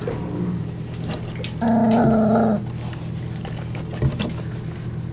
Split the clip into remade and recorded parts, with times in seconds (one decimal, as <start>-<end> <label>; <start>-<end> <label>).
0.0-5.1 recorded